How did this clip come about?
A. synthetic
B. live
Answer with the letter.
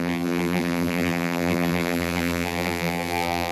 A